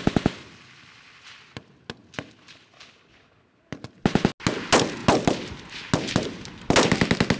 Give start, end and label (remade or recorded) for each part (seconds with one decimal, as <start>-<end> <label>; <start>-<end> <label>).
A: 0.0-7.4 recorded